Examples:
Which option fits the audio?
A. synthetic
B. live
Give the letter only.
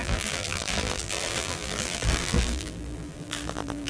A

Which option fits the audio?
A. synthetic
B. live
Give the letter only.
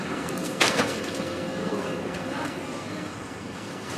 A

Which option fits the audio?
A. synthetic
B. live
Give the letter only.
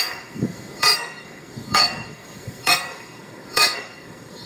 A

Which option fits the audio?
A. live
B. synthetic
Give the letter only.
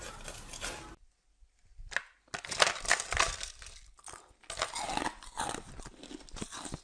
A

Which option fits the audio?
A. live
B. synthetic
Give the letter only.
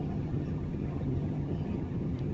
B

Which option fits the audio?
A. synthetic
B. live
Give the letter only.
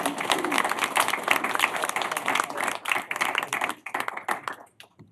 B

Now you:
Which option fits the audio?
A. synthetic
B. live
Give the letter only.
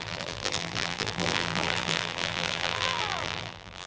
A